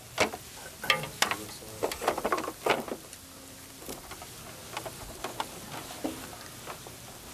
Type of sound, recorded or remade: recorded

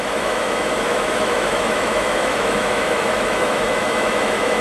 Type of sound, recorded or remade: remade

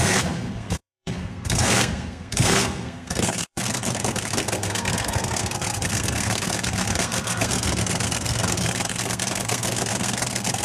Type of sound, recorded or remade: remade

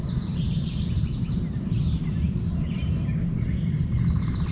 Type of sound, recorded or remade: remade